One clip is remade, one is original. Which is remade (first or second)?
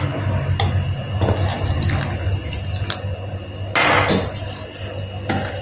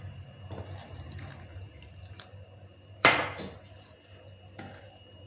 second